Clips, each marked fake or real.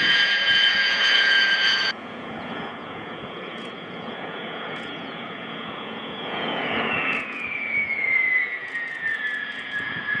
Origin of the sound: fake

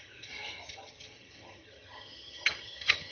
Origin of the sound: fake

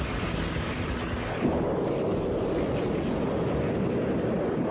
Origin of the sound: real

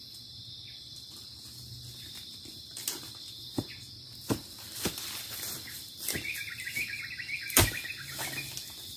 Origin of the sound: real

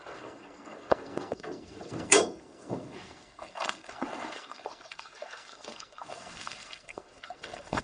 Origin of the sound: fake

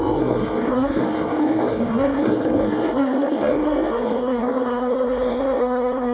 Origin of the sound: fake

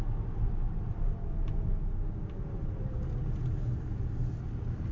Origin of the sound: real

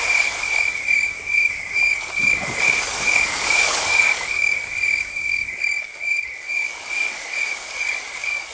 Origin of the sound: fake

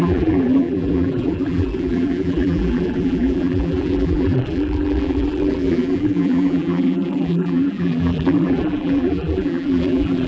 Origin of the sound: fake